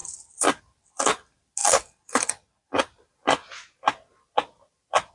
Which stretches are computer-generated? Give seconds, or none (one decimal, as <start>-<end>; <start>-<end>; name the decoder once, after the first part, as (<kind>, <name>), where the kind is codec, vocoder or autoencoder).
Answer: none